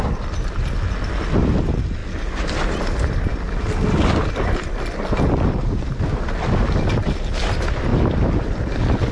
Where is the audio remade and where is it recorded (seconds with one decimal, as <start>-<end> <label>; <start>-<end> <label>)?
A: 0.0-9.1 recorded